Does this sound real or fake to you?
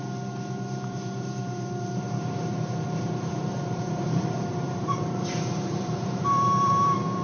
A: fake